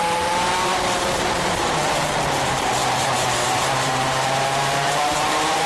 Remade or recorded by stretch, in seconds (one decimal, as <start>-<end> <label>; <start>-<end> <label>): 0.0-5.7 remade